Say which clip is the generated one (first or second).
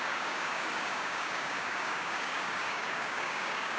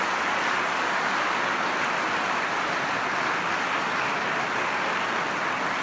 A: first